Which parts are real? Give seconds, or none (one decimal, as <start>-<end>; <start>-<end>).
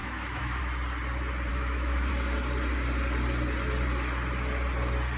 0.6-1.5; 2.1-5.2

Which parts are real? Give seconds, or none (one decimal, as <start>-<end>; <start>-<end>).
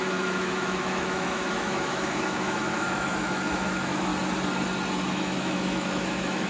4.1-5.1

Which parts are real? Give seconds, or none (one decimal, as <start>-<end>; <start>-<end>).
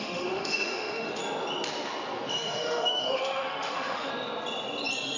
1.2-2.3; 4.1-5.2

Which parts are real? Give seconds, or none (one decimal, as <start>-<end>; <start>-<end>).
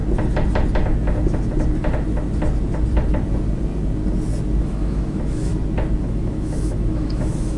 0.0-4.6; 5.5-6.0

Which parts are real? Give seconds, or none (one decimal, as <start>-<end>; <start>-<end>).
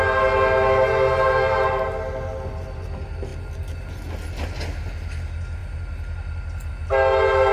0.0-7.5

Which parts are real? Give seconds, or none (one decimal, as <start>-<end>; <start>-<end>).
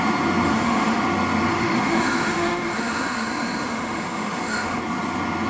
0.0-0.5; 1.0-1.5; 4.8-5.5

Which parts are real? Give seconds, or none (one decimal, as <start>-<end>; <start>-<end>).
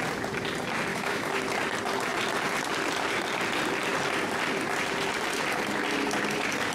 0.0-0.9; 1.4-6.7